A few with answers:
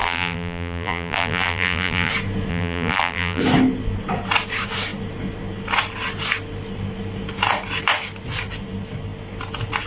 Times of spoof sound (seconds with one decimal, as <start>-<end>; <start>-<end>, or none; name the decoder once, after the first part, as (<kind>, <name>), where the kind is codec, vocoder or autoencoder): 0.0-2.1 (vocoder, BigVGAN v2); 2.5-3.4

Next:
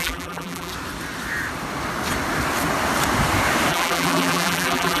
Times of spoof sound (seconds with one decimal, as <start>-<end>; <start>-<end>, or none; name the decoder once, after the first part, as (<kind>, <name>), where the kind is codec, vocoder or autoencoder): 0.0-0.7 (vocoder, BigVGAN v2); 3.7-5.0

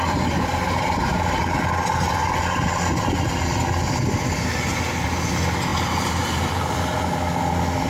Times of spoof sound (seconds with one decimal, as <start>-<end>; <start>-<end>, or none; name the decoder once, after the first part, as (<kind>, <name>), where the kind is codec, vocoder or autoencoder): 0.5-1.4 (vocoder, BigVGAN v2); 5.7-7.0